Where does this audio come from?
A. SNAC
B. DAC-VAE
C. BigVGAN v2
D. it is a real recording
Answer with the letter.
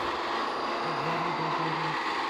D